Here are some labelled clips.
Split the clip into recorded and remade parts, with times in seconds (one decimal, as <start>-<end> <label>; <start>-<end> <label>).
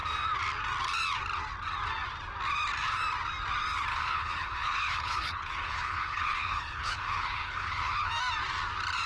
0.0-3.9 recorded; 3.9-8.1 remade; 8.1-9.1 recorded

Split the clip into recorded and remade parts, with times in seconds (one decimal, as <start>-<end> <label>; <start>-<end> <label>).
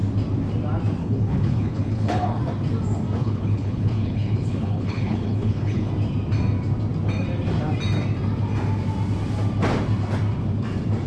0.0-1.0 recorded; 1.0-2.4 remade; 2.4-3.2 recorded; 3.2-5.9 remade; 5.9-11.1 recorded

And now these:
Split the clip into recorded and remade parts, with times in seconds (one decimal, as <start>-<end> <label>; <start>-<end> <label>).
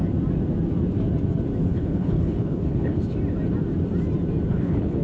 0.0-1.7 recorded; 1.7-3.0 remade; 3.0-4.5 recorded; 4.5-5.0 remade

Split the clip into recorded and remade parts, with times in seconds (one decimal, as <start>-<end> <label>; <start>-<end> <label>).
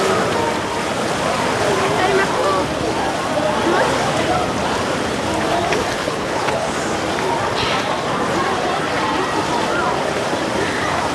0.0-6.0 recorded; 6.0-6.7 remade; 6.7-11.1 recorded